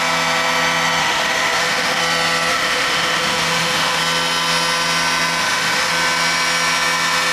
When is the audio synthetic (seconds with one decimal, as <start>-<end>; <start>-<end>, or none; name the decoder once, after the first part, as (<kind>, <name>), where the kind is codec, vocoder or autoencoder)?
1.0-2.0 (autoencoder, DAC-VAE); 2.5-4.0; 5.4-5.9